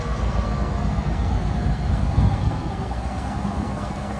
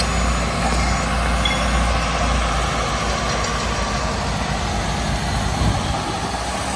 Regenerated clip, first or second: first